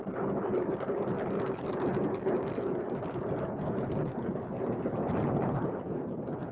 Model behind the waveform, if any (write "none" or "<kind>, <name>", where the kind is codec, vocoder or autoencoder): none